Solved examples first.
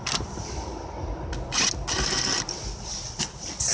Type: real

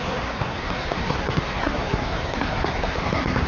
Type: fake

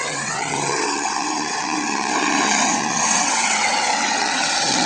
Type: fake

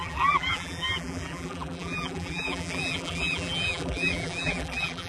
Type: fake